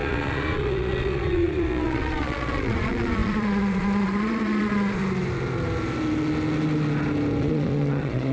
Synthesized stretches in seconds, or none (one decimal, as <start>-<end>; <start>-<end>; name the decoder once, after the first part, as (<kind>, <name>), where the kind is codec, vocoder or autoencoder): 0.0-5.0 (vocoder, Vocos); 7.4-8.3